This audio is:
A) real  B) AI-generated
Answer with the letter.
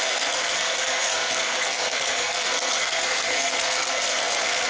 B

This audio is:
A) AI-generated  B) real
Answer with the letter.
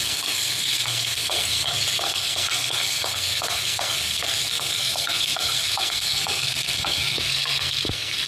A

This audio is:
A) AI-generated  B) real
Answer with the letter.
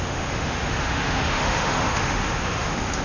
A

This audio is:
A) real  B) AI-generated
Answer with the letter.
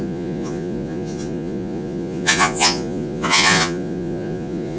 B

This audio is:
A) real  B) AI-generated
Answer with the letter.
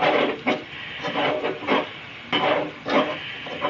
A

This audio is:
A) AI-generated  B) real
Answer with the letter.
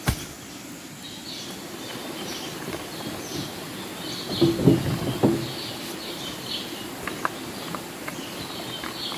B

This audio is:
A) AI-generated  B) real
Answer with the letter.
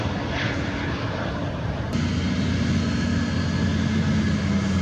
B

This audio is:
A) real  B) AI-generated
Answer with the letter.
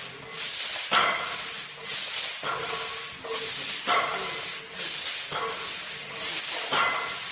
A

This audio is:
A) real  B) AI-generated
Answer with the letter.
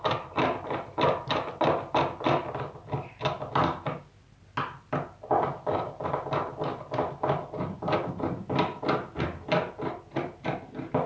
A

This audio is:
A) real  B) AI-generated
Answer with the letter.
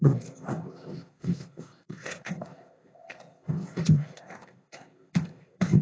B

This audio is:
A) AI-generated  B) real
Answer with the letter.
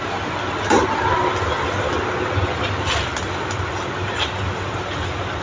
B